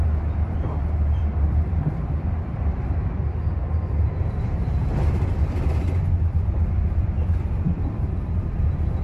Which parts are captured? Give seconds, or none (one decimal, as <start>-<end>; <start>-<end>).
4.8-6.0